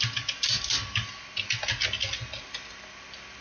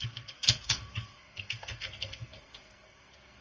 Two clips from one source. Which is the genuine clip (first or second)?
first